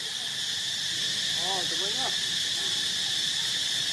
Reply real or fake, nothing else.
real